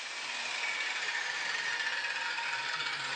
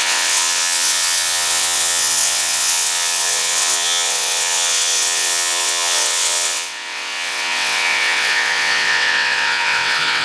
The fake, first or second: second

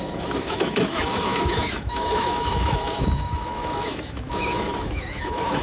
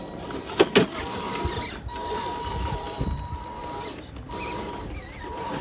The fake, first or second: first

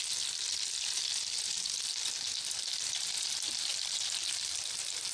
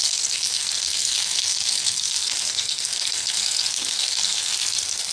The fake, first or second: second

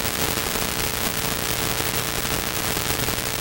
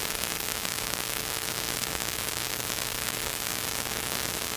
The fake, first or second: second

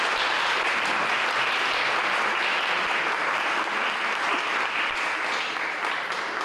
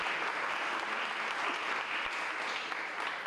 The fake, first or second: first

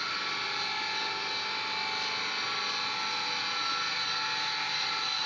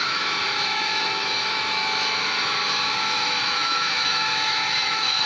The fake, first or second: second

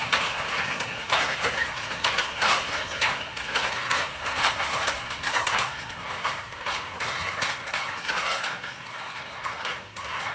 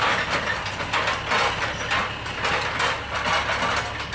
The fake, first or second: first